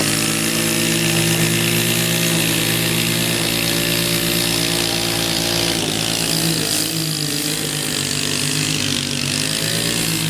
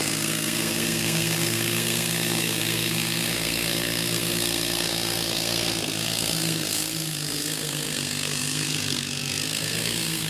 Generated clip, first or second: second